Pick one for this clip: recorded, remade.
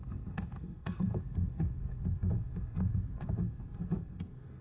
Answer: remade